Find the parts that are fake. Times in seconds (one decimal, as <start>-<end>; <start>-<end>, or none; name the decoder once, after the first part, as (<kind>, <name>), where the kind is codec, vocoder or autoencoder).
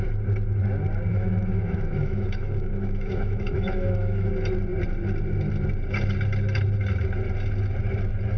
1.1-4.3 (autoencoder, DAC-VAE)